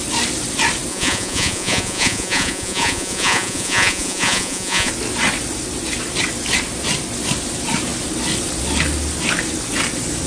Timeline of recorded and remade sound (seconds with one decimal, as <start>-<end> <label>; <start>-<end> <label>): 0.0-0.9 recorded; 0.9-4.9 remade; 4.9-10.3 recorded

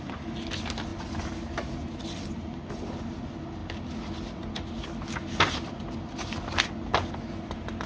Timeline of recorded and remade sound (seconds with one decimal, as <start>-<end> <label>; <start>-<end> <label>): 0.0-7.9 recorded

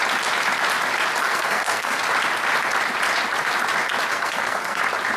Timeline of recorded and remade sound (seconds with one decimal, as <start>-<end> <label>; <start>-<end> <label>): 0.0-1.2 recorded; 1.2-2.0 remade; 2.0-4.1 recorded; 4.1-4.8 remade; 4.8-5.2 recorded

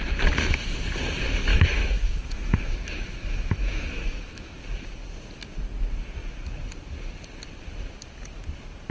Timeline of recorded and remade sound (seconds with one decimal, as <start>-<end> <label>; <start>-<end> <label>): 0.0-1.5 recorded; 1.5-4.6 remade; 4.6-8.9 recorded

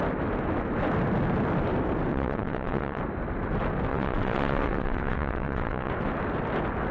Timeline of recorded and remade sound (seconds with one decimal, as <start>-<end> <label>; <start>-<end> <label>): 0.0-2.1 recorded; 2.1-3.0 remade; 3.0-3.9 recorded; 3.9-5.9 remade; 5.9-6.9 recorded

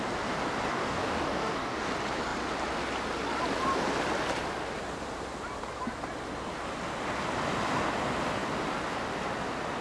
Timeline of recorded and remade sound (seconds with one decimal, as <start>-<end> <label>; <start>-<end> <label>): 0.0-0.7 recorded; 0.7-1.9 remade; 1.9-9.8 recorded

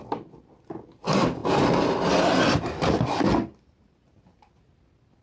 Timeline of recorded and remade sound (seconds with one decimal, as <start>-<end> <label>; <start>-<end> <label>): 0.0-5.2 recorded

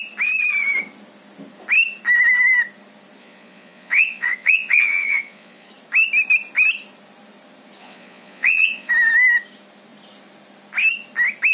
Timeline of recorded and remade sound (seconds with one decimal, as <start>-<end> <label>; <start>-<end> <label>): 0.0-3.2 recorded; 3.2-5.7 remade; 5.7-7.8 recorded; 7.8-8.9 remade; 8.9-11.5 recorded